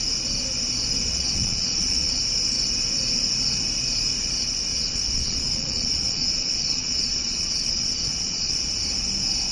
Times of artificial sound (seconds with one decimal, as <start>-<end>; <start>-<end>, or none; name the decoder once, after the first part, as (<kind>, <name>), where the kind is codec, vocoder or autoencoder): 1.1-2.2 (vocoder, Vocos); 4.7-8.7